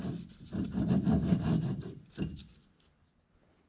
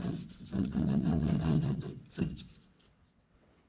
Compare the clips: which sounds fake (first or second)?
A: second